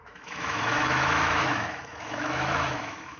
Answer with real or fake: fake